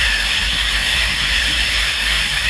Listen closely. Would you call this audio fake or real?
fake